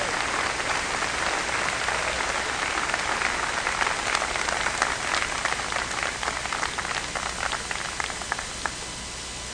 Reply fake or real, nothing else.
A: real